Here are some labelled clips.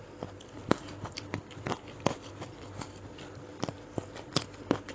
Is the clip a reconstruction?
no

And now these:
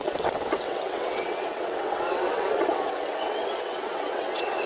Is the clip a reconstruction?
yes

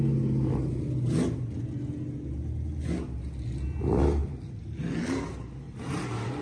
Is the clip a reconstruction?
no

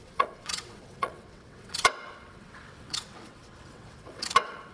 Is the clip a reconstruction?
yes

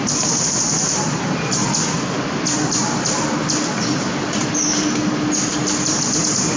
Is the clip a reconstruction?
no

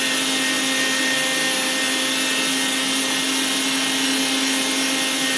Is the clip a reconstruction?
no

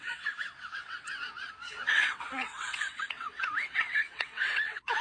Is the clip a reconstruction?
yes